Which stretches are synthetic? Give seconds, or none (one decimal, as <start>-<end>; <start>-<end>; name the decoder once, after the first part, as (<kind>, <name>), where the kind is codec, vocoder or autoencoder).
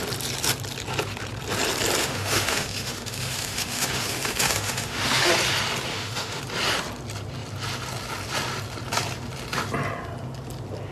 2.0-5.3 (autoencoder, DAC-VAE); 5.9-6.4